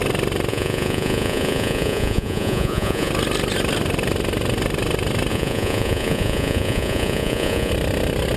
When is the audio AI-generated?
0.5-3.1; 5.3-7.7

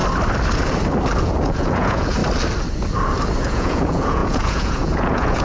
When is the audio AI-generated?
1.2-2.2; 3.4-5.4